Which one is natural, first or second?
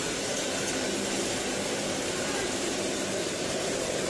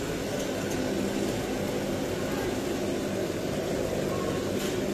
second